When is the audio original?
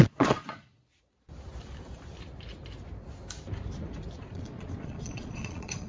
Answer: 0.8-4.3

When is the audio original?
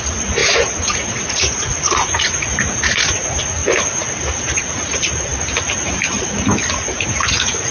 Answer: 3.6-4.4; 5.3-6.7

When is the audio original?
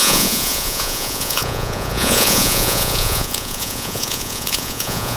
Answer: none